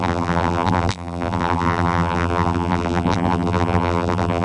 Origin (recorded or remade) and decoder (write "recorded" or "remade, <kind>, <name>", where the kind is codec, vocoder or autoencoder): remade, vocoder, BigVGAN v2